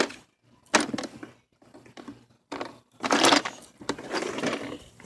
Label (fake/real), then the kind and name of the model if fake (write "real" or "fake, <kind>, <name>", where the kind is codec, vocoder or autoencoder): real